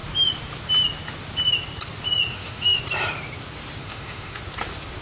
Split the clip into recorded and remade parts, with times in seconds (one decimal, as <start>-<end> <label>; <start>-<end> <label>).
0.0-2.3 recorded; 2.3-2.8 remade; 2.8-3.8 recorded; 3.8-4.4 remade; 4.4-5.0 recorded